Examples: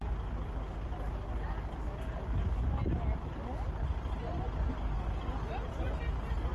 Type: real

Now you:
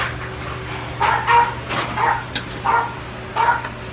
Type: real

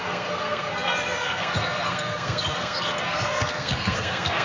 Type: fake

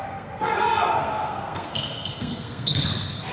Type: fake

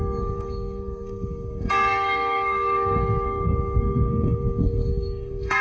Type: fake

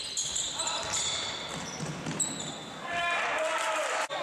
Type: real